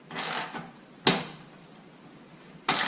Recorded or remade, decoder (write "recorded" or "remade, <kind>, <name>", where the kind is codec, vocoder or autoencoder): remade, vocoder, BigVGAN v2